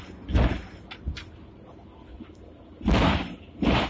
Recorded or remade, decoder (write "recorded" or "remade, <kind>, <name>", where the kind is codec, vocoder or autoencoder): recorded